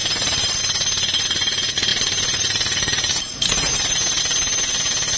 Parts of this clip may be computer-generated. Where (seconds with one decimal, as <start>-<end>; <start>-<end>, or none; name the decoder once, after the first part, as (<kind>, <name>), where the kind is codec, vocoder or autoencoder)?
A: 0.0-0.6 (vocoder, BigVGAN v2); 1.9-4.2